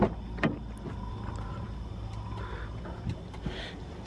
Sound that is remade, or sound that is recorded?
recorded